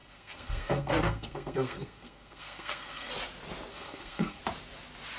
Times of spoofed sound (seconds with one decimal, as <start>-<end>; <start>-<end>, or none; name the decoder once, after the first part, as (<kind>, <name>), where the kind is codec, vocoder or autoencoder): 0.0-3.1 (codec, SNAC); 3.7-4.4